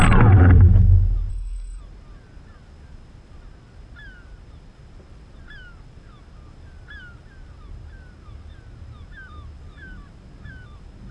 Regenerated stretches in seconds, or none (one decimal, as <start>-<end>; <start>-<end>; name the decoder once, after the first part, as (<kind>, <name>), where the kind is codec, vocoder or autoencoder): 1.3-1.8 (codec, SNAC)